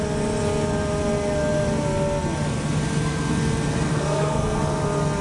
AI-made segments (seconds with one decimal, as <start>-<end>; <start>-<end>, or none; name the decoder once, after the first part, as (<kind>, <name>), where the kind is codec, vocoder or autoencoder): 3.9-4.6 (codec, SNAC)